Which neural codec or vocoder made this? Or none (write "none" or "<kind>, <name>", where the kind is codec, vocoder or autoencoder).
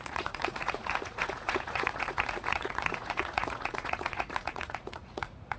vocoder, Vocos